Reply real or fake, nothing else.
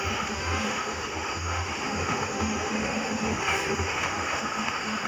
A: fake